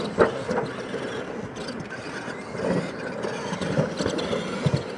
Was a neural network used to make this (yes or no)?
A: no